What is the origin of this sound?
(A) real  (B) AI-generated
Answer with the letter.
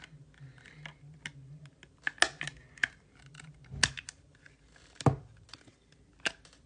A